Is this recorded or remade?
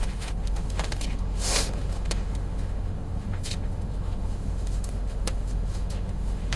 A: remade